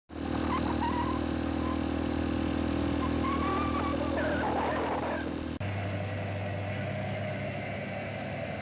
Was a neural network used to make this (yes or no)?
no